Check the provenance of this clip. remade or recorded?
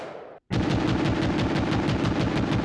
recorded